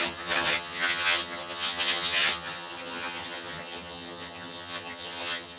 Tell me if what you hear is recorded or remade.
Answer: remade